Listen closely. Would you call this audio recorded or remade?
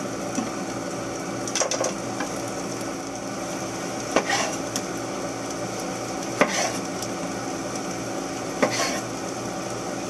recorded